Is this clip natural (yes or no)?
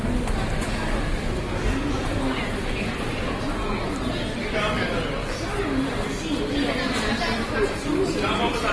yes